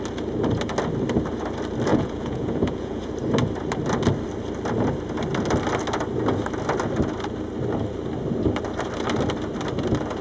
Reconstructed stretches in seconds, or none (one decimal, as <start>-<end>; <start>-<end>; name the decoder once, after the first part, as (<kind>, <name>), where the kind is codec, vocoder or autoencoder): 1.9-3.1 (vocoder, Vocos)